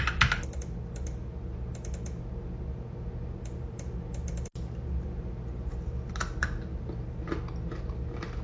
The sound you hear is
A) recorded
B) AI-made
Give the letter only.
A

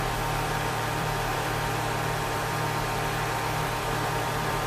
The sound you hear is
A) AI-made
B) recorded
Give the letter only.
A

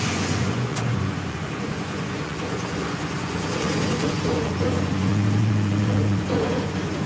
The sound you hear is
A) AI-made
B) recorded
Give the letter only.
A